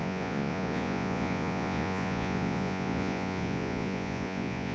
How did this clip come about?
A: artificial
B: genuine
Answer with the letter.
A